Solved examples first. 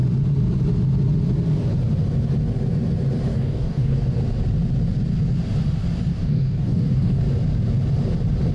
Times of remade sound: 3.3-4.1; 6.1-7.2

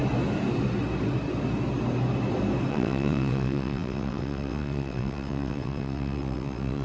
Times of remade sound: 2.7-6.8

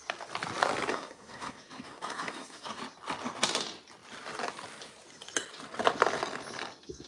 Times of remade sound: 0.9-2.8